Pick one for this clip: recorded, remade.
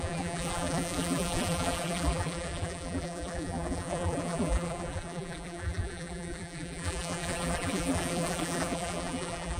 remade